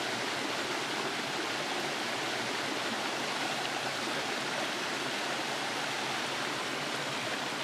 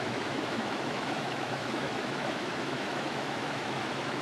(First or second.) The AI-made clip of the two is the second